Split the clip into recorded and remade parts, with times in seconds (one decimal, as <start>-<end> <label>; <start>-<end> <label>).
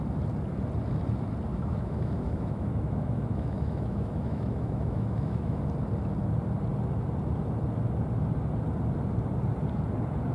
0.0-1.5 recorded; 1.5-5.6 remade; 5.6-10.3 recorded